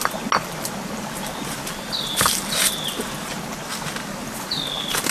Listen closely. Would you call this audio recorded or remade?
recorded